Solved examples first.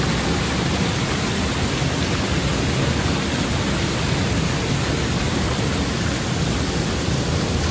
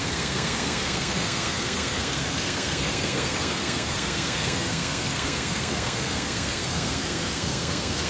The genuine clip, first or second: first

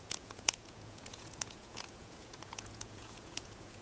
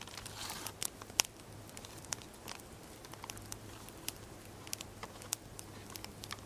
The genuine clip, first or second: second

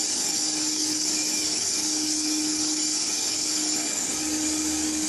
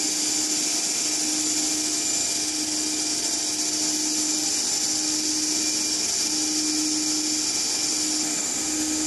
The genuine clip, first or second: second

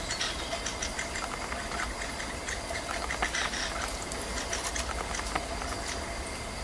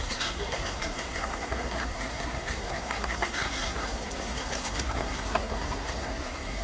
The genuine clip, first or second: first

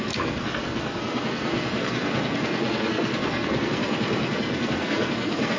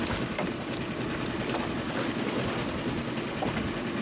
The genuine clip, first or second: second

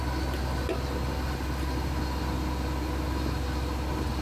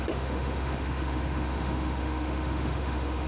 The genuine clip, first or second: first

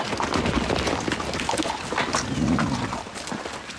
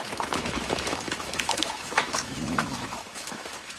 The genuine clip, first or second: first